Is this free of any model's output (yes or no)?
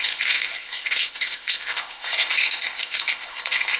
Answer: no